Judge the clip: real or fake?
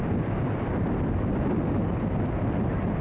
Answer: real